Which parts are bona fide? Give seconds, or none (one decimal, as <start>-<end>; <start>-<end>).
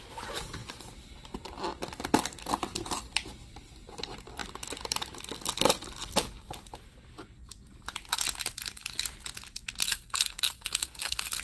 0.0-9.8